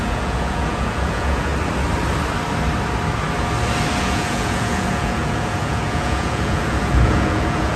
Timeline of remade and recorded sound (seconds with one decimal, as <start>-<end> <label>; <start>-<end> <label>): 0.0-1.5 remade; 1.5-4.0 recorded; 4.0-7.8 remade